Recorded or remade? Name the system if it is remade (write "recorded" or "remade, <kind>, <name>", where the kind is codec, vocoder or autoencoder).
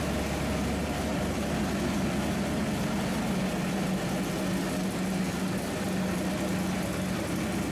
recorded